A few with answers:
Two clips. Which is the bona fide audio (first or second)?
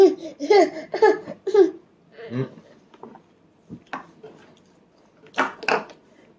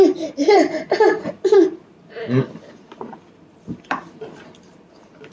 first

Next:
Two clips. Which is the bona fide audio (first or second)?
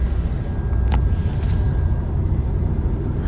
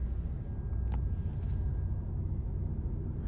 second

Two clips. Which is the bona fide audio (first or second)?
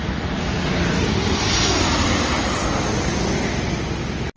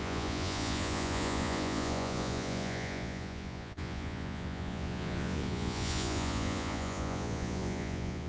first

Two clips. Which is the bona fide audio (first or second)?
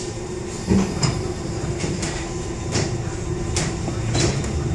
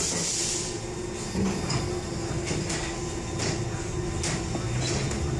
second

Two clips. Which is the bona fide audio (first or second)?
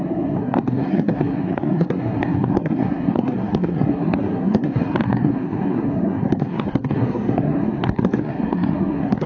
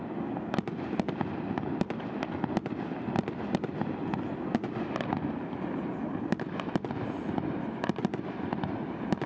second